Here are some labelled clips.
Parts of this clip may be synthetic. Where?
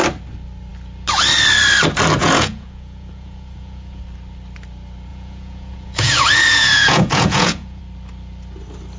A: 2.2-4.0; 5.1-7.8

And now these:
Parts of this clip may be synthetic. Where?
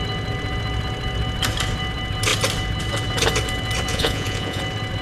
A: 3.9-4.6